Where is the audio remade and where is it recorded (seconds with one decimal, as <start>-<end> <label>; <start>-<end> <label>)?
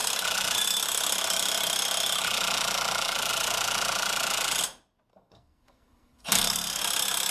0.0-5.1 recorded; 5.1-6.8 remade; 6.8-7.3 recorded